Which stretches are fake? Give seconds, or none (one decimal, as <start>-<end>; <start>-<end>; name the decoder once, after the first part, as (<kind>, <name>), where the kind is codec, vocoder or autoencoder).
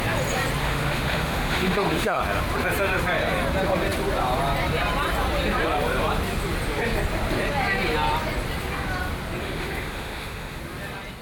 0.6-2.2 (autoencoder, DAC-VAE); 9.4-10.6